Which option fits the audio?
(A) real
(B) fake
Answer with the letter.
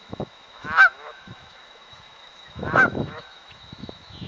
B